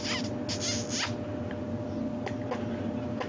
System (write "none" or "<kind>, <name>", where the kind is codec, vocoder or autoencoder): none